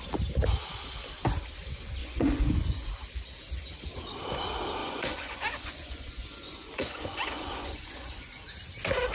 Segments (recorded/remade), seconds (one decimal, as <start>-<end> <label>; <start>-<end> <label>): 0.0-2.0 recorded; 2.0-2.9 remade; 2.9-4.8 recorded; 4.8-8.4 remade; 8.4-9.1 recorded